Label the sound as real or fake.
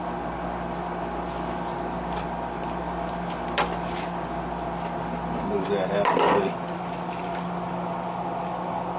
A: real